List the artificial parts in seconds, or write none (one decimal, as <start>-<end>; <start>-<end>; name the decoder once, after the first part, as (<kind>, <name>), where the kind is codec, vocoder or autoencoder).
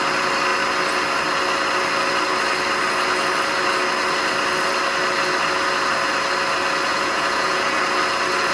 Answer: 6.9-7.8 (vocoder, Vocos)